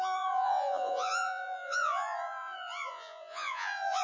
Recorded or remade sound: remade